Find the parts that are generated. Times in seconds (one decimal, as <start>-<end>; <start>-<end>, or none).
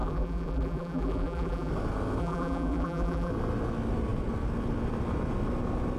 0.0-1.7; 2.2-3.3